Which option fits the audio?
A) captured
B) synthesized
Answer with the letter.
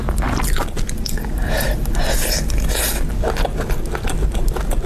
A